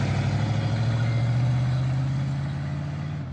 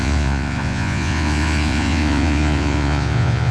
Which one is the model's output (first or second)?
second